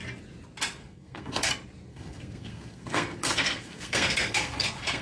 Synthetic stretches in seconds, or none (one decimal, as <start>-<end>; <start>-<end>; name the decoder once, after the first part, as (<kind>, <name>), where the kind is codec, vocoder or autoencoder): 0.8-1.5 (codec, SNAC); 1.9-5.0